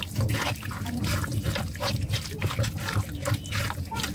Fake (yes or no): no